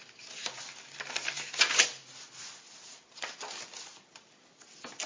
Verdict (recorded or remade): recorded